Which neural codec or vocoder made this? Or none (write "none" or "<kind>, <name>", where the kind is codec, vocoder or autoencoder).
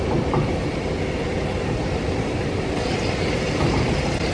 none